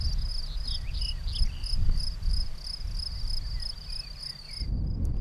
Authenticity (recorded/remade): recorded